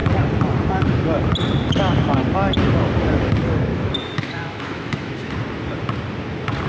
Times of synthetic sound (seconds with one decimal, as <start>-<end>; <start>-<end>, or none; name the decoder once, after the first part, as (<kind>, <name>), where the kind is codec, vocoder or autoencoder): 3.7-5.3 (autoencoder, DAC-VAE)